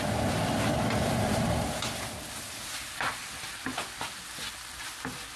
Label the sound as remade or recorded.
recorded